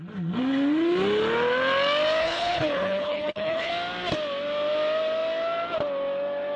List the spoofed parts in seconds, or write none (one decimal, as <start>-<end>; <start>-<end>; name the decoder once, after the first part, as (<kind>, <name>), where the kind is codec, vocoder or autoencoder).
2.2-3.7 (codec, HILCodec)